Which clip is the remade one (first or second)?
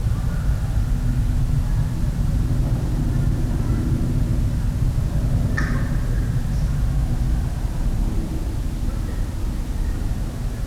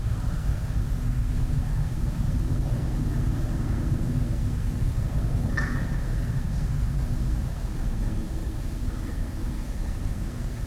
second